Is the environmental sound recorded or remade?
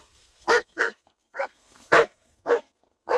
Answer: remade